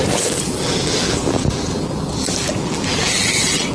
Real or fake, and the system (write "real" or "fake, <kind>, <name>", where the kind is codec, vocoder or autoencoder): fake, vocoder, BigVGAN v2